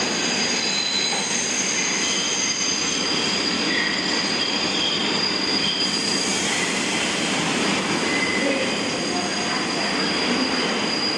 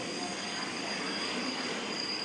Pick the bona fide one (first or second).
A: first